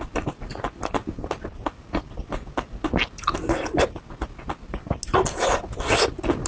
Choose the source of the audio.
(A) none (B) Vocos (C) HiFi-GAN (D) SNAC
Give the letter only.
A